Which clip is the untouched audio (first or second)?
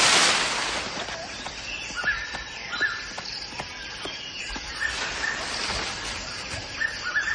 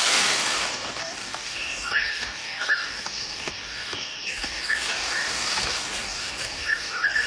first